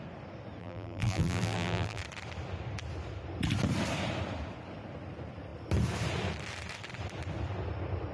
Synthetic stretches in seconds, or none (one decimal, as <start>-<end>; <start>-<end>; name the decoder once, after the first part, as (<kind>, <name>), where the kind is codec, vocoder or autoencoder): 0.6-2.0 (vocoder, BigVGAN v2)